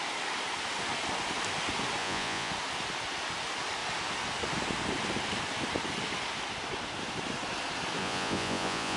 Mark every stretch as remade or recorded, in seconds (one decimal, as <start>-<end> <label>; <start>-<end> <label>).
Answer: 0.0-2.0 recorded; 2.0-2.5 remade; 2.5-8.0 recorded; 8.0-9.0 remade